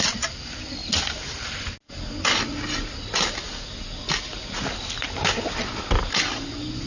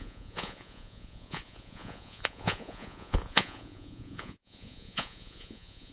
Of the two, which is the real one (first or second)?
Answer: first